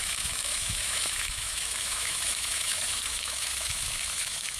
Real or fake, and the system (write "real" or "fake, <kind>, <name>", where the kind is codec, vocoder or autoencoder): fake, autoencoder, DAC-VAE